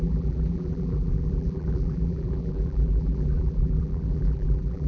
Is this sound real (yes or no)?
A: no